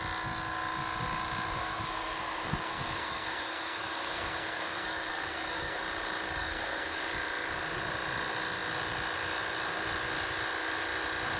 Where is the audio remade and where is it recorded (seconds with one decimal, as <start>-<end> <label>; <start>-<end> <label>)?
0.0-1.6 recorded; 1.6-5.8 remade; 5.8-6.4 recorded; 6.4-7.0 remade; 7.0-11.4 recorded